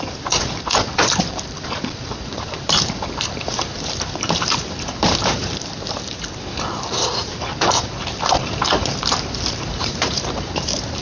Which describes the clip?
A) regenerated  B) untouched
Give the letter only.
A